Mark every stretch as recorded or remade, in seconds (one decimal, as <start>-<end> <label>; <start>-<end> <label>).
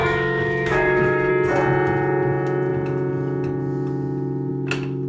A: 0.0-1.3 remade; 1.3-5.1 recorded